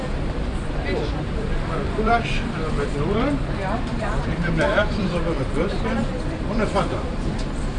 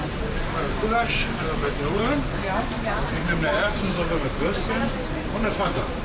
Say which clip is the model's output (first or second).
first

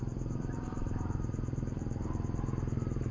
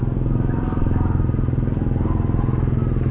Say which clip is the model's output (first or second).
first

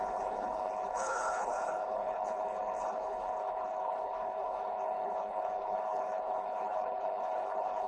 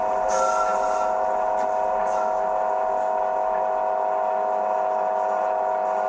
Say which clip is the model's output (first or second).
first